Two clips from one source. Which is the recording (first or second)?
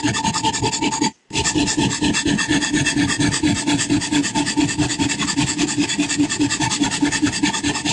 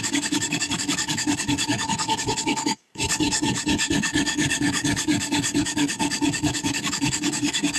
first